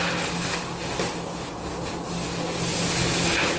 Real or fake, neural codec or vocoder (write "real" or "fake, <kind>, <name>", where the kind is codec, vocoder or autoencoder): real